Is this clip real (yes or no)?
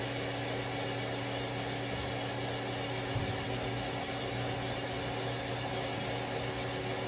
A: yes